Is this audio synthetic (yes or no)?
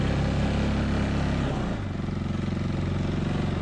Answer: no